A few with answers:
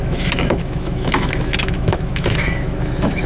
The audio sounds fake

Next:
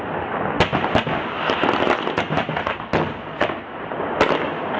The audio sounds real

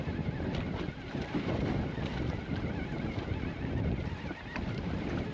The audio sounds real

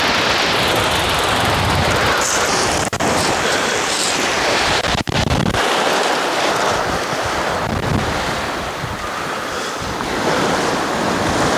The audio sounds fake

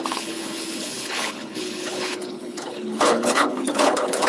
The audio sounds fake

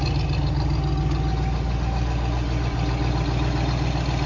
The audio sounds real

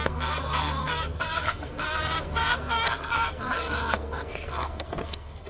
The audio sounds fake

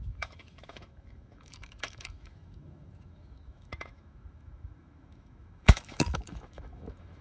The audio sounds fake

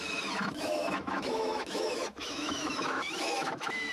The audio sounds fake